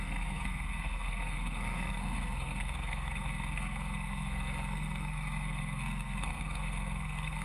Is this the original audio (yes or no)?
no